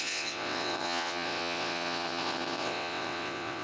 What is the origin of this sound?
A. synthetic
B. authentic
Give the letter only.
A